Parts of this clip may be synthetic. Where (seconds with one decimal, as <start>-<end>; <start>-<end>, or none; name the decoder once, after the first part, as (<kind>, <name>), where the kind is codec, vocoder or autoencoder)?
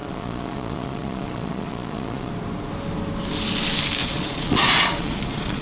0.0-2.3 (vocoder, Vocos); 4.0-5.6